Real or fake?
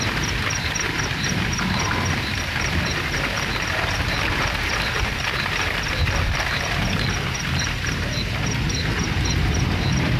fake